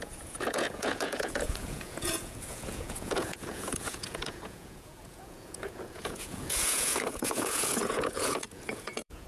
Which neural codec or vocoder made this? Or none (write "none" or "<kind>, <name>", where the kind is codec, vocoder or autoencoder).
vocoder, Vocos